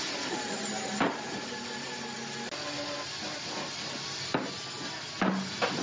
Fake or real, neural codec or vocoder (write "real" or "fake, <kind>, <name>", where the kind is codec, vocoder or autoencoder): real